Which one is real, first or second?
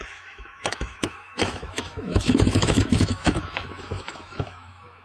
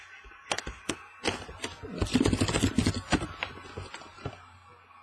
second